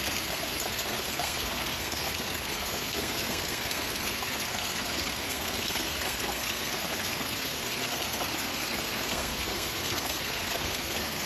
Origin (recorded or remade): remade